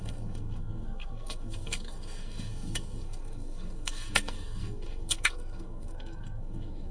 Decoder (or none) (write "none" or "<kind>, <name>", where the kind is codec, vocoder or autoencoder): codec, SNAC